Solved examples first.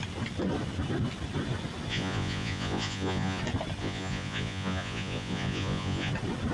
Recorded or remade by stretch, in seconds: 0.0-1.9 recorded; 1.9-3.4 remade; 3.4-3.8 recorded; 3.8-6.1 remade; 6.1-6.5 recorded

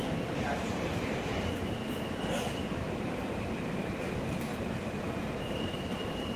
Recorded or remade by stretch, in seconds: 0.0-6.4 remade